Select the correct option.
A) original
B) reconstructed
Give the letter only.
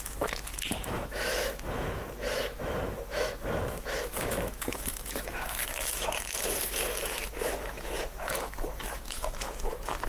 B